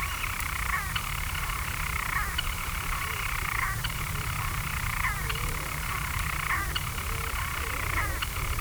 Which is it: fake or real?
fake